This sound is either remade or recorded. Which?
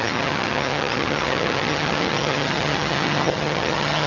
remade